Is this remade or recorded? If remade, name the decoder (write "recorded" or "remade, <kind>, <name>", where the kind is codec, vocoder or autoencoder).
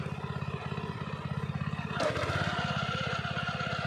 recorded